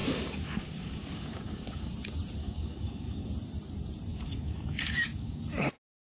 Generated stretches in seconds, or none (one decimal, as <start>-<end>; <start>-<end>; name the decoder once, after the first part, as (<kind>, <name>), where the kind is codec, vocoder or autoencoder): 0.0-1.9 (codec, DAC); 2.4-3.3; 4.1-5.4